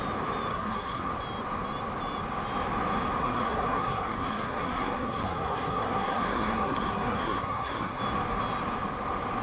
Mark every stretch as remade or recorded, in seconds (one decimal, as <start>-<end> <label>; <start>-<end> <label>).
0.0-0.5 recorded; 0.5-1.1 remade; 1.1-3.2 recorded; 3.2-8.0 remade; 8.0-9.4 recorded